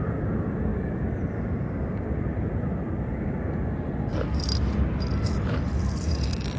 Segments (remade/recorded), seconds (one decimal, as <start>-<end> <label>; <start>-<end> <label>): 0.0-6.6 recorded